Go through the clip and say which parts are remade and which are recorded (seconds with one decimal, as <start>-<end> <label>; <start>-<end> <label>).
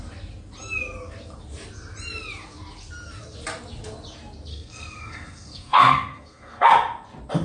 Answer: 0.0-4.5 recorded; 4.5-6.7 remade; 6.7-7.4 recorded